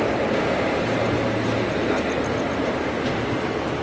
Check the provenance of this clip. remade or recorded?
recorded